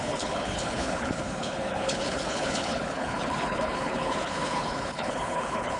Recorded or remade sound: remade